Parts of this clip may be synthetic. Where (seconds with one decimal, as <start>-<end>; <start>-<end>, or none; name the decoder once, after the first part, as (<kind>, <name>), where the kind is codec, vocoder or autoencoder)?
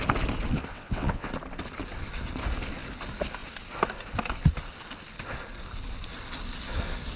0.7-1.3 (vocoder, WaveNeXt)